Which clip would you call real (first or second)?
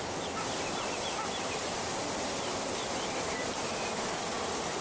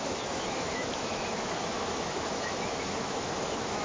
first